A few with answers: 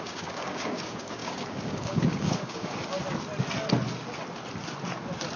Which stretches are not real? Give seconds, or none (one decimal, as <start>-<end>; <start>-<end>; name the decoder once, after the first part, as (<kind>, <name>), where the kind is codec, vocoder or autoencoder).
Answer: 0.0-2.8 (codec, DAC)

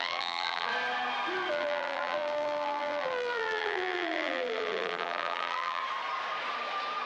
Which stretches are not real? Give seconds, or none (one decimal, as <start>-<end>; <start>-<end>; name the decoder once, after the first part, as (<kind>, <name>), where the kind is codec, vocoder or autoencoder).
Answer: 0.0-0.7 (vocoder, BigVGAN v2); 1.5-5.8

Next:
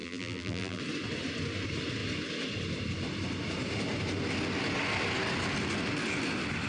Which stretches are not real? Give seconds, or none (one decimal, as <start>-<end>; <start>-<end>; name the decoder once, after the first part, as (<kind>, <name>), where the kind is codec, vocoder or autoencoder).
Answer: 0.0-0.8 (vocoder, BigVGAN v2)

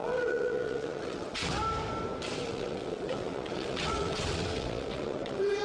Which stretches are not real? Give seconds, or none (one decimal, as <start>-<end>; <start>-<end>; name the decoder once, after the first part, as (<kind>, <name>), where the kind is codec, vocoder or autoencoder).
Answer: 0.0-1.6 (vocoder, WaveNeXt); 2.4-5.6